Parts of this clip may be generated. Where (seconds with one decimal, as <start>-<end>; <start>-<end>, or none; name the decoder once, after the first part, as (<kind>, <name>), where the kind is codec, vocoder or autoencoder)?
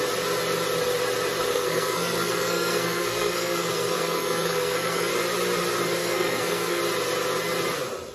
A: 1.5-5.1 (codec, SNAC); 6.0-6.8